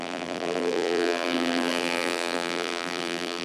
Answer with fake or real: fake